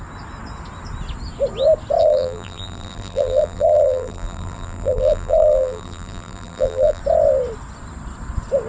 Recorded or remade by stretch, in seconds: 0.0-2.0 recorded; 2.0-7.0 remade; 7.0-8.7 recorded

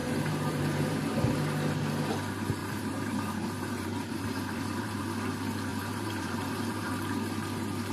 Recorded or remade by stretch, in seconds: 0.0-1.0 remade; 1.0-2.6 recorded; 2.6-5.0 remade; 5.0-5.7 recorded; 5.7-6.9 remade; 6.9-7.9 recorded

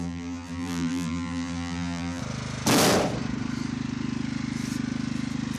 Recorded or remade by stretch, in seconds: 0.0-2.2 remade; 2.2-5.6 recorded

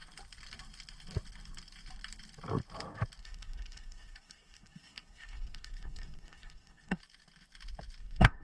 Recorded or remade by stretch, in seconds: 0.0-3.2 recorded; 3.2-7.0 remade; 7.0-8.0 recorded; 8.0-8.4 remade